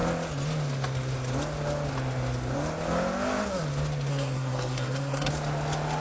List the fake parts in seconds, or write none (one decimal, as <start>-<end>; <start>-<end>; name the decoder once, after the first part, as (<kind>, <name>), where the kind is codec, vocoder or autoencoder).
4.1-5.3 (codec, SNAC)